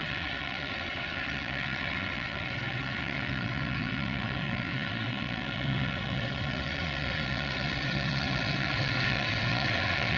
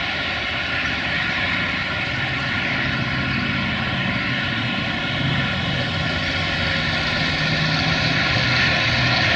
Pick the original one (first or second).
second